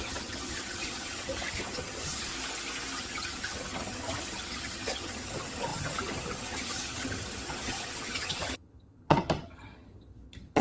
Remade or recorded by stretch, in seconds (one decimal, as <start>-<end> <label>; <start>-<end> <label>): 0.0-2.3 remade; 2.3-3.0 recorded; 3.0-10.6 remade